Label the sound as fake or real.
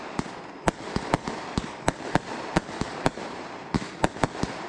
real